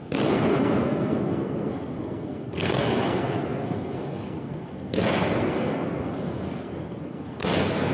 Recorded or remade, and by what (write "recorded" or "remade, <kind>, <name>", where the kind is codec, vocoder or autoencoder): remade, codec, SNAC